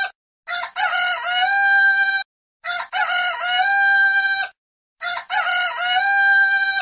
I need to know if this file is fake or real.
real